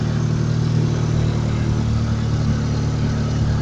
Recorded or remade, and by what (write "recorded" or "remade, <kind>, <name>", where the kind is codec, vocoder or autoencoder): recorded